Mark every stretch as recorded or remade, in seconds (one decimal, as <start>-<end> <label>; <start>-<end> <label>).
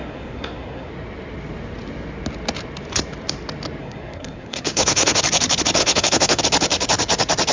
0.0-0.9 remade; 0.9-3.8 recorded; 3.8-5.2 remade; 5.2-5.8 recorded; 5.8-6.4 remade; 6.4-7.5 recorded